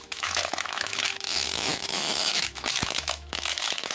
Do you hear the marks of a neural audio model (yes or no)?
yes